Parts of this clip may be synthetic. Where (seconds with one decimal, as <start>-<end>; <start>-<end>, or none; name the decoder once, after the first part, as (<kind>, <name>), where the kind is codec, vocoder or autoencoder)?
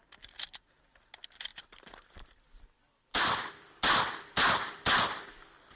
1.5-3.5 (vocoder, BigVGAN v2)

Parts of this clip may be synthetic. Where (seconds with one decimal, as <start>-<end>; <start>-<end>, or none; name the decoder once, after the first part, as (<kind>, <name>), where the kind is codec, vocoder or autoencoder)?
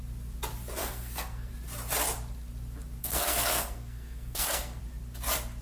0.8-1.5 (codec, SNAC); 3.0-4.8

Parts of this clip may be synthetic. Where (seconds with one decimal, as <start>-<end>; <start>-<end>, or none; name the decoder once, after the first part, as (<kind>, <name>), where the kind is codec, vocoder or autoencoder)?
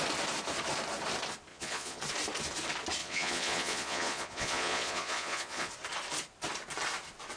1.5-2.0 (vocoder, Vocos); 3.0-5.7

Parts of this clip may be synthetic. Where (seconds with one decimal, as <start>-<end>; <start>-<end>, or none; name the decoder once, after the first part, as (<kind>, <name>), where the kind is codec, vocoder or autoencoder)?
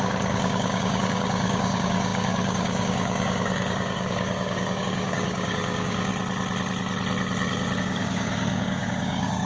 0.0-6.1 (codec, DAC); 7.8-9.5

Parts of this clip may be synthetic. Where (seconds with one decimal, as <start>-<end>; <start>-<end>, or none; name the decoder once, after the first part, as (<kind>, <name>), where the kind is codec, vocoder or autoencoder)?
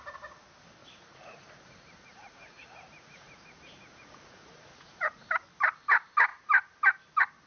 0.8-5.3 (vocoder, Vocos)